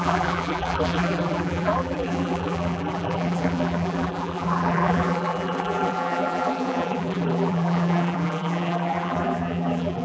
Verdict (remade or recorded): remade